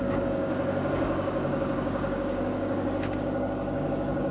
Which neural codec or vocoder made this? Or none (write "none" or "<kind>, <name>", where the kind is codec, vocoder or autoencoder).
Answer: codec, DAC